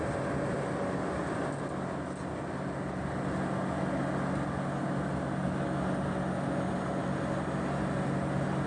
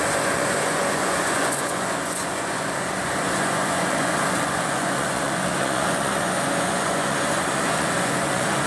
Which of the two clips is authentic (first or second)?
first